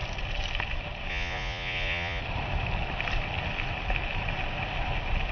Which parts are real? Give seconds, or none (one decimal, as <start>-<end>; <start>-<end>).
0.0-1.1; 2.2-5.3